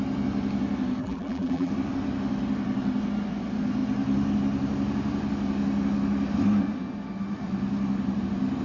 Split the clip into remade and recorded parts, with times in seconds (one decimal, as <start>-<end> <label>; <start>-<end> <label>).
0.0-1.0 recorded; 1.0-1.7 remade; 1.7-8.6 recorded